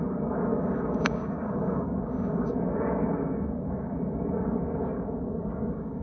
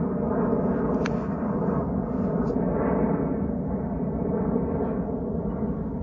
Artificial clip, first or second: first